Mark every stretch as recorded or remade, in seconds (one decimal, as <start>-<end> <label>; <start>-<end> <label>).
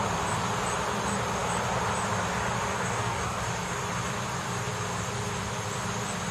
0.0-2.7 recorded; 2.7-3.4 remade; 3.4-6.3 recorded